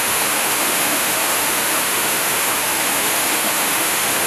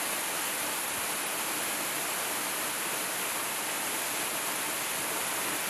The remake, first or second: first